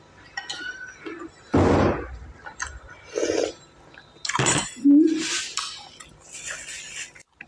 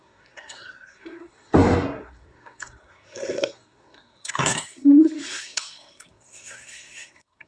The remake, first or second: second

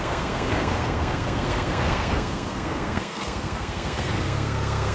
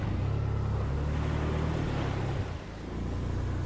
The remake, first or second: first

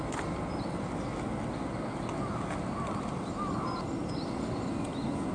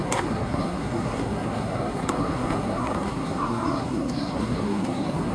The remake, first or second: second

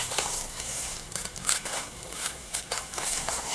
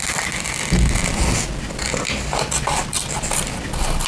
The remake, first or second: first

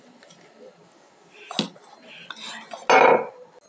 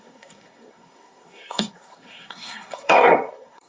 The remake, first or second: second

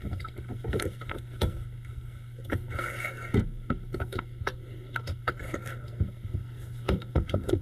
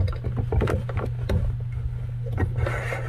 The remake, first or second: first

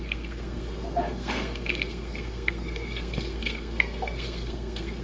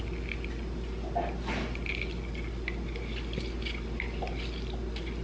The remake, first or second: first